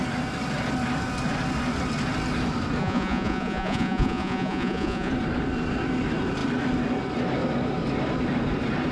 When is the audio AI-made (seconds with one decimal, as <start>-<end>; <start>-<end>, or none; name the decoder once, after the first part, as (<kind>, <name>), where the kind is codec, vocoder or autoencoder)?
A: 2.8-5.1 (vocoder, Vocos)

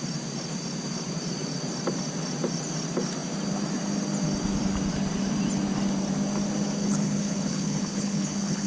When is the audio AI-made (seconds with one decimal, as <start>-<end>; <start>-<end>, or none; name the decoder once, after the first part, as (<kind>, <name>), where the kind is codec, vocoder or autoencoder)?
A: 6.8-8.7 (codec, HILCodec)

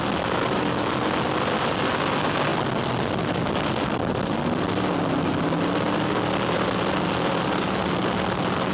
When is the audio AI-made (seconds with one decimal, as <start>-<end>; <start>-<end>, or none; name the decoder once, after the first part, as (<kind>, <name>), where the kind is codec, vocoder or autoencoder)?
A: none

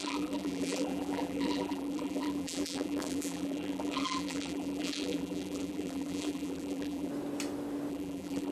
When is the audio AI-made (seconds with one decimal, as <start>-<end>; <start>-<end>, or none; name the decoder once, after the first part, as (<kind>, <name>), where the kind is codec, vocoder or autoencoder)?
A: 0.0-7.1 (vocoder, BigVGAN v2); 7.9-8.5